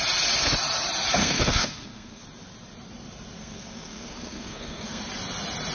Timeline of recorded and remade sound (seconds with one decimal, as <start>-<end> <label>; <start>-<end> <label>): 0.0-1.2 recorded; 1.2-2.2 remade; 2.2-3.4 recorded; 3.4-5.0 remade; 5.0-5.7 recorded